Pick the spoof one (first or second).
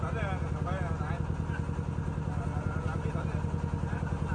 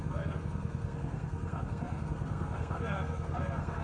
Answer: second